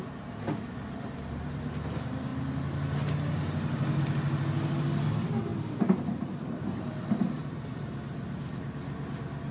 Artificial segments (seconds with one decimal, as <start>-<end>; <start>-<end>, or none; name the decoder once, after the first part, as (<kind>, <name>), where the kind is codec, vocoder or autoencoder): 5.5-6.9 (vocoder, BigVGAN v2); 7.4-7.9